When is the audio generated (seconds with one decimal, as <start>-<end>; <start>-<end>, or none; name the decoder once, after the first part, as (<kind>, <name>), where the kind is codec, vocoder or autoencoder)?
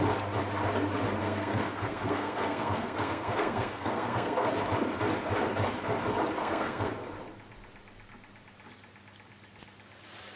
1.2-4.5 (codec, SNAC); 6.4-6.9